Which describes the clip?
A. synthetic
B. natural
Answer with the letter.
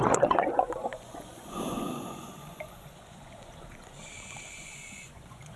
A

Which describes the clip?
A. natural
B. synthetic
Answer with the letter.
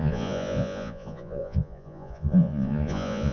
B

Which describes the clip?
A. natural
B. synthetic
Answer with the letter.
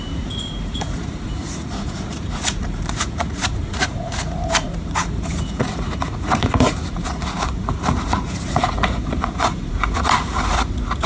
B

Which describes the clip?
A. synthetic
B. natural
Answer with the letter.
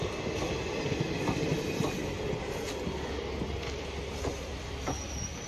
B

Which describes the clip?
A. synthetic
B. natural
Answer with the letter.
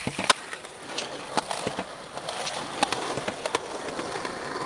B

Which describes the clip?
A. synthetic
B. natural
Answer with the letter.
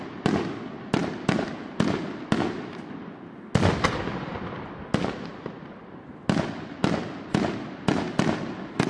B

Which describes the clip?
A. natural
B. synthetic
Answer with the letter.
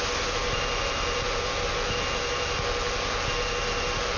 A